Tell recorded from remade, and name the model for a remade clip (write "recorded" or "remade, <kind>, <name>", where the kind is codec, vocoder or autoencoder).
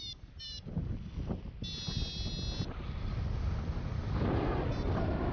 recorded